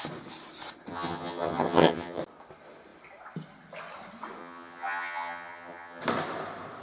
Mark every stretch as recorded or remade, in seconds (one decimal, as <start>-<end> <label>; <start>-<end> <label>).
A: 0.0-0.9 recorded; 0.9-2.2 remade; 2.2-4.4 recorded; 4.4-6.0 remade; 6.0-6.8 recorded